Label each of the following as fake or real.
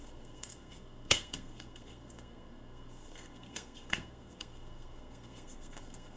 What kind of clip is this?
fake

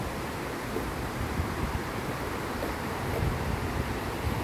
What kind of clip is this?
real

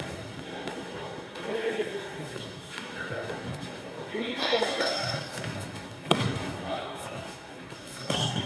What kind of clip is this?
fake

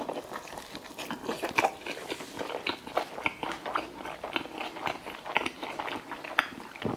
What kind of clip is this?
real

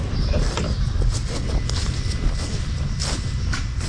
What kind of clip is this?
real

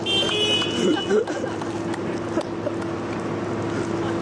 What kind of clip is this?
real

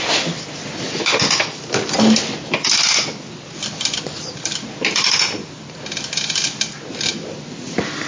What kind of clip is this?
real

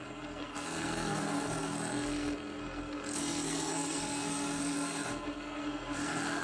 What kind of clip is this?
fake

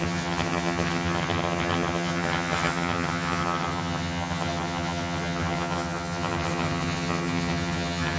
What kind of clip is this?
fake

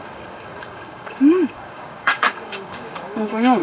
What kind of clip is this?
fake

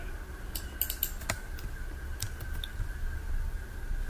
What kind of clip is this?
real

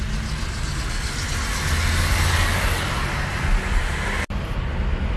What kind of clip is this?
real